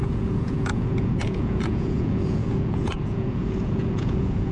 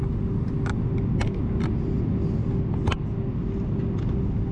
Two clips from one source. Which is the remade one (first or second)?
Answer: first